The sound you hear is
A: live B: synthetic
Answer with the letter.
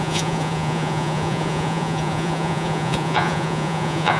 B